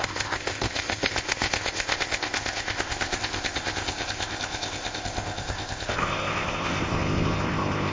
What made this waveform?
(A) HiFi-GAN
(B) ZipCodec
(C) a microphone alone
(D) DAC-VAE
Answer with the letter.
B